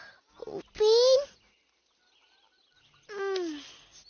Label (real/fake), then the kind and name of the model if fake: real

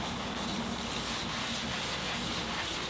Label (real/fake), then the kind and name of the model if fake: real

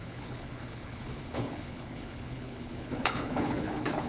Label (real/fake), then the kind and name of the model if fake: fake, codec, HILCodec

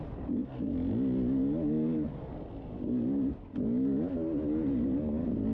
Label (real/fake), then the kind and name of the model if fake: real